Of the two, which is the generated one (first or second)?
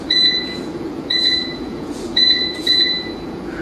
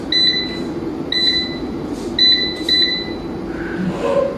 first